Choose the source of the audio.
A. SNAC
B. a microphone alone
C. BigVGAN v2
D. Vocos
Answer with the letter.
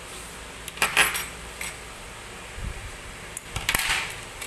B